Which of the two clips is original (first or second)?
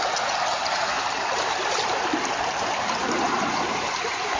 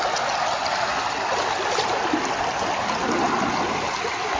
second